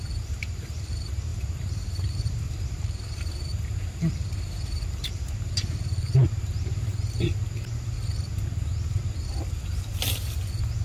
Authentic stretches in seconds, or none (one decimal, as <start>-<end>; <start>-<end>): 6.9-10.8